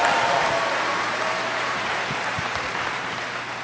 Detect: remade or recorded remade